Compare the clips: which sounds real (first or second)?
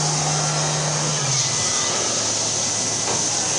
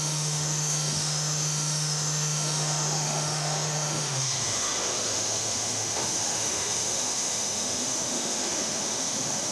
first